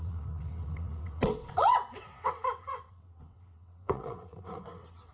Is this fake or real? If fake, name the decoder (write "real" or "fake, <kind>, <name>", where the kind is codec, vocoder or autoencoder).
fake, vocoder, WaveNeXt